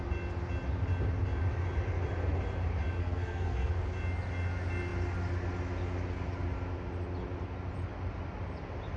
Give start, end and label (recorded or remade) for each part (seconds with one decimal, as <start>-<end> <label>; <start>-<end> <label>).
0.0-3.0 recorded; 3.0-3.7 remade; 3.7-9.0 recorded